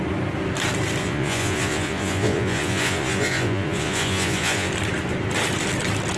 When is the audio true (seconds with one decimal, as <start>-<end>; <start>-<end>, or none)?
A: 0.0-1.0; 4.7-6.2